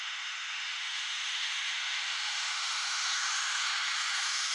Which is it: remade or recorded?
remade